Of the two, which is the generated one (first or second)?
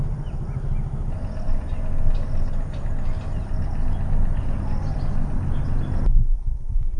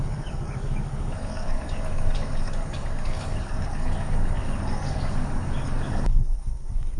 second